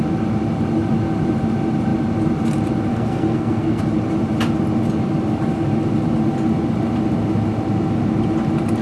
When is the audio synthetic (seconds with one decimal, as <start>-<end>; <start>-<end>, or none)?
2.9-3.8